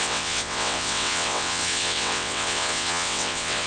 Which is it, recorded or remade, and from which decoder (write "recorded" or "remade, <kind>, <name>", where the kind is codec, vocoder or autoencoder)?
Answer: remade, vocoder, WaveNeXt